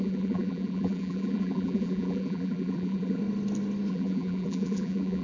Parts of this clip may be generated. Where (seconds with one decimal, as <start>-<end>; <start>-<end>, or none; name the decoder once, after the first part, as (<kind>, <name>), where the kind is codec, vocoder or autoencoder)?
0.0-3.2 (vocoder, BigVGAN v2); 3.9-5.2